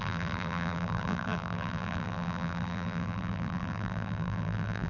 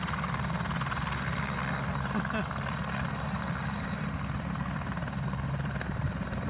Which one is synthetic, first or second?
first